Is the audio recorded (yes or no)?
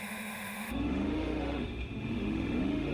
no